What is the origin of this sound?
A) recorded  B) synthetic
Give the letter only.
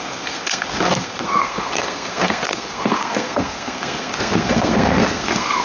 B